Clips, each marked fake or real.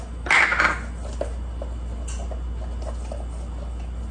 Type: real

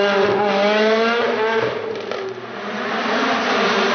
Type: real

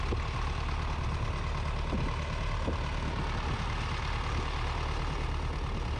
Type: real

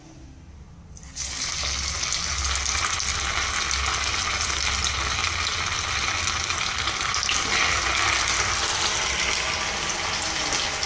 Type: real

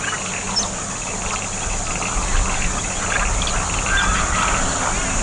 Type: real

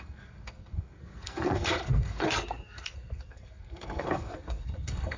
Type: fake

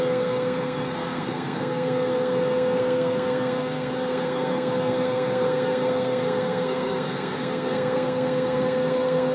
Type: fake